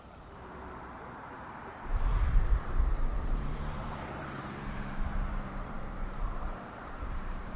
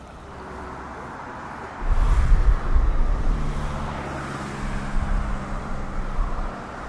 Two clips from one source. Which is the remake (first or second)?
first